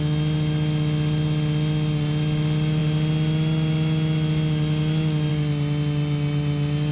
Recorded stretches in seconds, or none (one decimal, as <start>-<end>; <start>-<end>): 0.0-6.9